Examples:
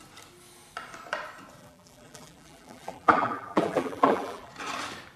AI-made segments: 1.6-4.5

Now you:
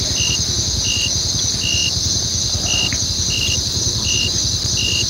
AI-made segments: none

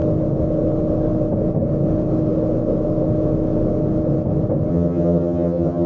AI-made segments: 4.7-5.9

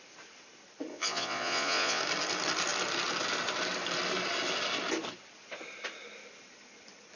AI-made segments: 0.9-2.0

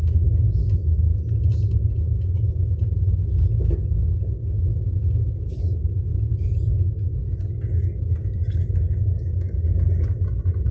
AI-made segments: 6.1-6.8; 8.2-9.1

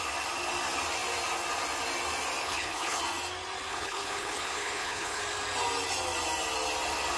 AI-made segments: 2.4-3.0; 3.7-5.2

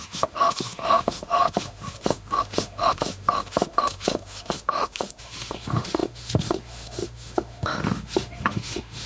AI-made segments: 0.0-9.1